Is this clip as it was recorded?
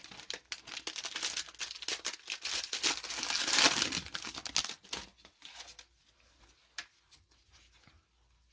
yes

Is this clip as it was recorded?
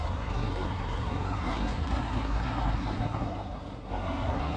no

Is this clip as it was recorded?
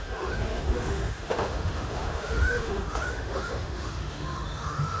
no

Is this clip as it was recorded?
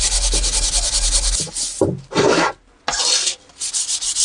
yes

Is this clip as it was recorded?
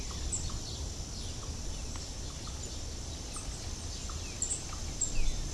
yes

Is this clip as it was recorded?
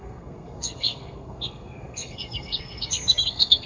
no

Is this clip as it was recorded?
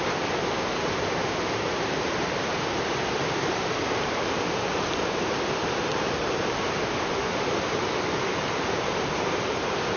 no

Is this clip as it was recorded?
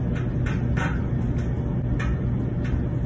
yes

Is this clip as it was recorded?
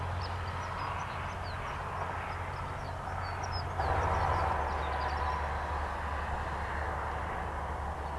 yes